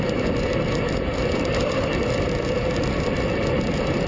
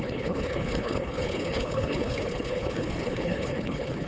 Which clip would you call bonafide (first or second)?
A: first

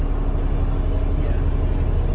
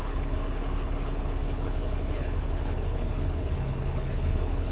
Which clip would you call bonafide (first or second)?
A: first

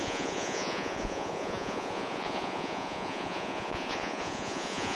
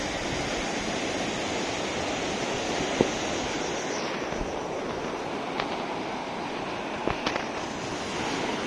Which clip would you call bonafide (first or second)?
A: second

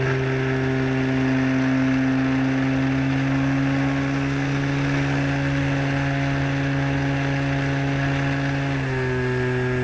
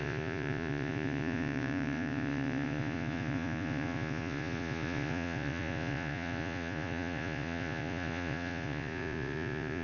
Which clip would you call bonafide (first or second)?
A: first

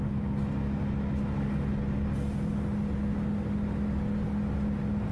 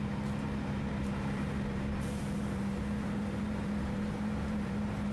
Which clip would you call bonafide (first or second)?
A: first